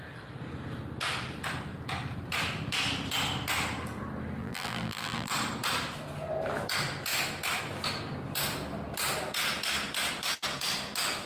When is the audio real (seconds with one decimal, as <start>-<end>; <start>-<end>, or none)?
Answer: 0.0-4.4; 5.3-11.3